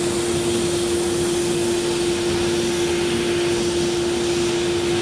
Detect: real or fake real